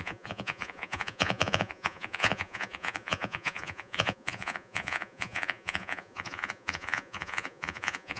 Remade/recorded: remade